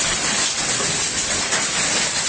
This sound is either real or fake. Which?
real